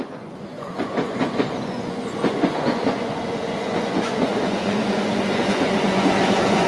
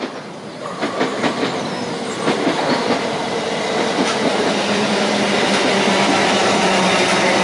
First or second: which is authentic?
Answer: second